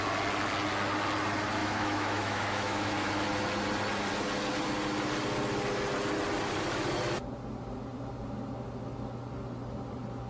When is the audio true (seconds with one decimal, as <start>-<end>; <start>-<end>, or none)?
0.0-1.6; 3.1-10.3